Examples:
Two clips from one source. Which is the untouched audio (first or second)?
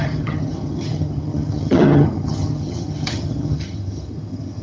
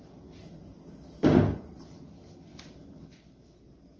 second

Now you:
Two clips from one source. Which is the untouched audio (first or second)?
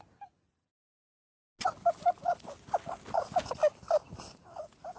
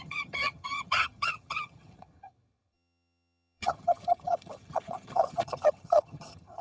first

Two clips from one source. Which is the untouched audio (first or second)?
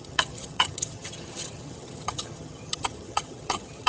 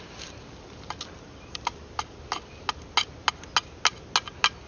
second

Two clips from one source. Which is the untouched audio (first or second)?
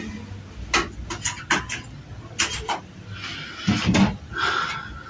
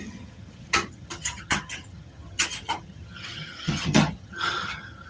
first